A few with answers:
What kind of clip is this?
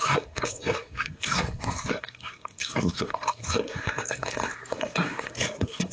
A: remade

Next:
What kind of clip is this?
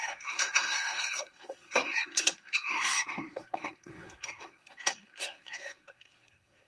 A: remade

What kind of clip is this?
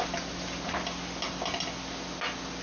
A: recorded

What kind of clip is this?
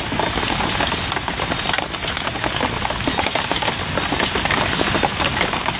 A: recorded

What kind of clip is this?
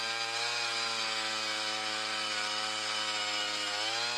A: recorded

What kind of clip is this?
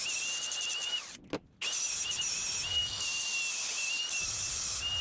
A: recorded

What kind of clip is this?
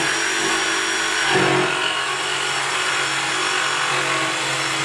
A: recorded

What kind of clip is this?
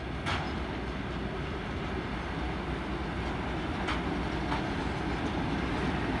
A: recorded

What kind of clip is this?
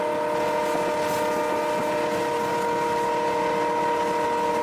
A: recorded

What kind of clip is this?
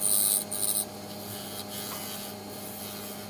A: recorded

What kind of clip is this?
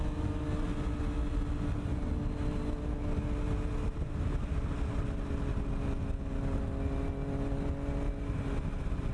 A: recorded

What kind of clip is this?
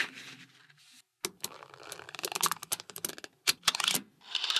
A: recorded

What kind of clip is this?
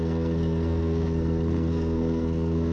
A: remade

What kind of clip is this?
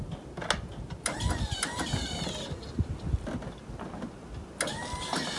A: recorded